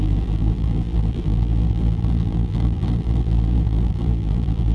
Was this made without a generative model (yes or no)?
no